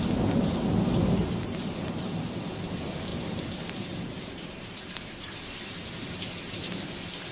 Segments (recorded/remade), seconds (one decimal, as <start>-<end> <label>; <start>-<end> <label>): 0.0-1.2 recorded; 1.2-1.8 remade; 1.8-3.1 recorded; 3.1-6.4 remade; 6.4-7.3 recorded